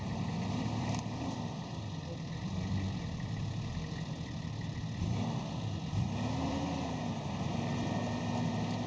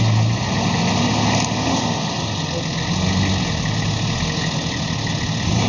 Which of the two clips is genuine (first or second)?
second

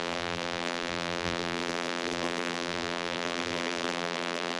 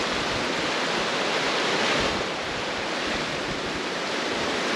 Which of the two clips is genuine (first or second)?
second